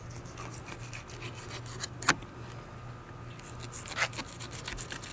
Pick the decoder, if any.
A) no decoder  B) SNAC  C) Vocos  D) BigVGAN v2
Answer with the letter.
A